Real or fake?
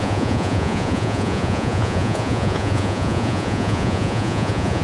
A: fake